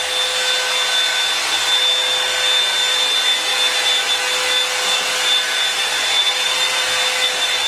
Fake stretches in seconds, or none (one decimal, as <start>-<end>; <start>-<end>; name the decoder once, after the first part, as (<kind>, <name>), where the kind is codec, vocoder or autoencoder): none